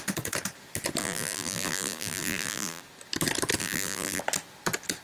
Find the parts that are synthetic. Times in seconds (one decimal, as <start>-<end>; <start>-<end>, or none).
1.0-2.8; 3.6-4.2